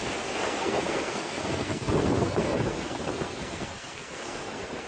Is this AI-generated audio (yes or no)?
yes